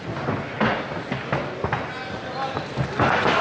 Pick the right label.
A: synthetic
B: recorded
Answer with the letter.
B